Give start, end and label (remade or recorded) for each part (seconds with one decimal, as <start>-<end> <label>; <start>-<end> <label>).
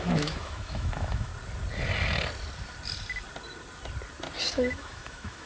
0.0-1.3 remade; 1.3-4.5 recorded; 4.5-5.5 remade